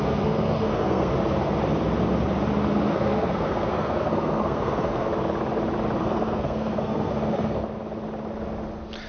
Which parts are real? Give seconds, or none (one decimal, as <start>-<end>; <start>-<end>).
1.1-2.9; 5.1-6.0; 7.6-9.1